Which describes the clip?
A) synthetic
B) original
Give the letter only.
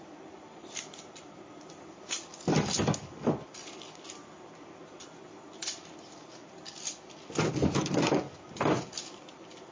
B